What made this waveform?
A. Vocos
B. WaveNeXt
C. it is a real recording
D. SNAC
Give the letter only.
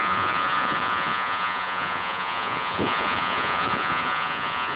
A